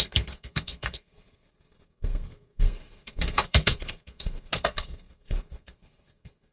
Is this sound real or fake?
fake